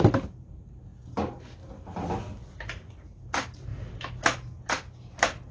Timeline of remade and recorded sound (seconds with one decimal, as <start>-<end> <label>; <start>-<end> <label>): 0.0-5.5 recorded